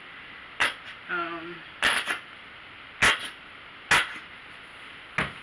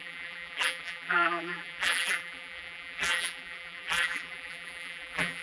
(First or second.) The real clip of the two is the first